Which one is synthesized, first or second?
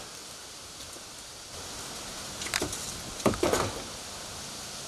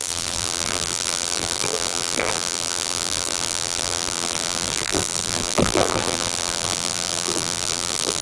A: second